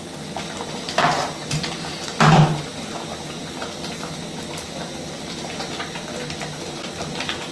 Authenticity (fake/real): real